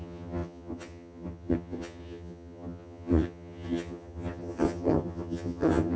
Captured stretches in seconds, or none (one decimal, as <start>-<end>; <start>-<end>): none